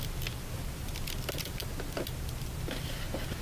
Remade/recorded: recorded